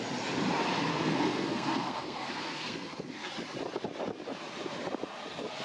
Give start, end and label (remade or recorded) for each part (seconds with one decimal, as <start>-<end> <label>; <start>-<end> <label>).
0.0-0.9 recorded; 0.9-3.3 remade; 3.3-5.6 recorded